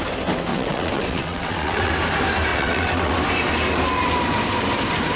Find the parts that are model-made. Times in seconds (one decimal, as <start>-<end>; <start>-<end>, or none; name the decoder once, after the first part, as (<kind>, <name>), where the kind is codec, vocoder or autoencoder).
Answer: 0.5-1.9 (vocoder, WaveNeXt); 2.5-3.2